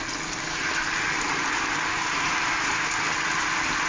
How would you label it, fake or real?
real